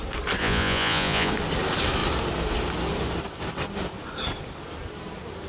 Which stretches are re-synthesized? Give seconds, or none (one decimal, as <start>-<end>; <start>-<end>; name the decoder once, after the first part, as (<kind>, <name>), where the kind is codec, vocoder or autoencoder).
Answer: 0.4-1.3 (vocoder, Vocos)